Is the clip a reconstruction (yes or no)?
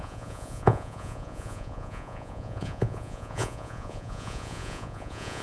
yes